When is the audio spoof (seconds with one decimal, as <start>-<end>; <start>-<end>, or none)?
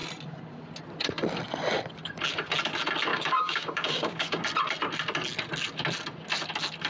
3.1-4.4